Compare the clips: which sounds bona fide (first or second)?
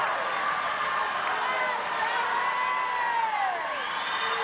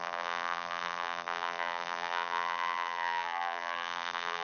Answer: first